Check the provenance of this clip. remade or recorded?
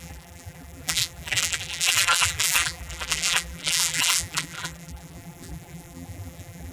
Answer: remade